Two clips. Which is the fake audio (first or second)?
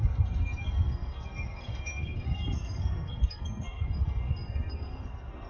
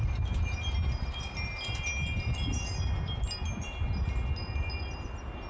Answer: first